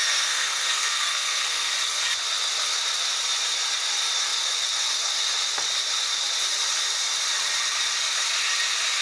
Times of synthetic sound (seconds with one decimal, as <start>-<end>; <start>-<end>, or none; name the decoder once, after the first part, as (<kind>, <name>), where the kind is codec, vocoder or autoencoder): 0.0-1.7 (codec, SNAC)